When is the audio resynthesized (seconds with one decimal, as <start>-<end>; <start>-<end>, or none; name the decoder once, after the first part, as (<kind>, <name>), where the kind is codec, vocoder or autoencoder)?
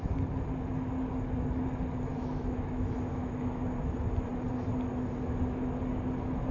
2.1-3.6 (autoencoder, DAC-VAE)